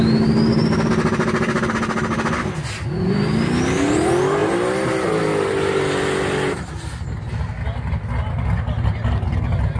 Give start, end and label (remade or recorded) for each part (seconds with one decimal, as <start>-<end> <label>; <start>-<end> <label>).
0.0-9.8 recorded